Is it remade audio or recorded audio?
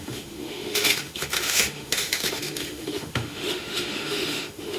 remade